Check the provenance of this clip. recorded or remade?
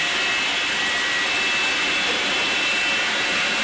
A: recorded